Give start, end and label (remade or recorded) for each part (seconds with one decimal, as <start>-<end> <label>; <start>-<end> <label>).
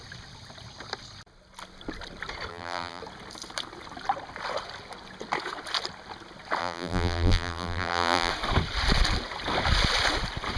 0.0-2.5 recorded; 2.5-3.0 remade; 3.0-6.6 recorded; 6.6-8.3 remade; 8.3-10.6 recorded